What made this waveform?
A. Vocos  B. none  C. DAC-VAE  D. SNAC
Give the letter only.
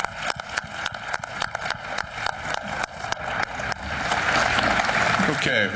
B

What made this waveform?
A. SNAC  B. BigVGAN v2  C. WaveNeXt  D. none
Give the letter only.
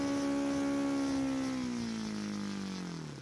D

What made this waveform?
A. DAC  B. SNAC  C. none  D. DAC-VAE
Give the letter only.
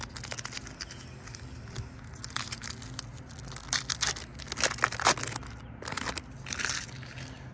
C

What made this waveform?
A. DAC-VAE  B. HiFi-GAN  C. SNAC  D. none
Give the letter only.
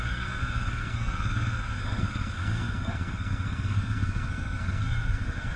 C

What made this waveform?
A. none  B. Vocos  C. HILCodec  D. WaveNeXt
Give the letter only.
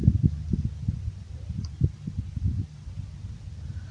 A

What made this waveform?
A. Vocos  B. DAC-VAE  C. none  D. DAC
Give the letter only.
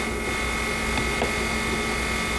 C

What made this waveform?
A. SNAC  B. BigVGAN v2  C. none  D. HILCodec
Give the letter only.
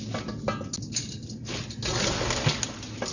C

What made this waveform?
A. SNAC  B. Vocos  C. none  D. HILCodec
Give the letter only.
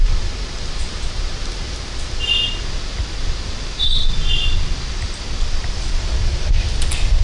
C